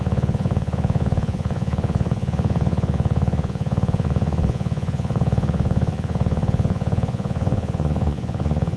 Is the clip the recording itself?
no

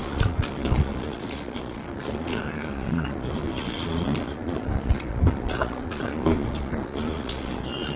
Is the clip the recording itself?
no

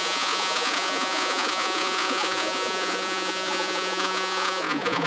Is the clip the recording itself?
no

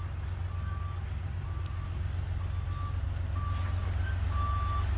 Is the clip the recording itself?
yes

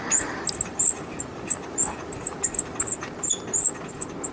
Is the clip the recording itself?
yes